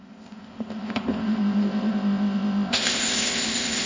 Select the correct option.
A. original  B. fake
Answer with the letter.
B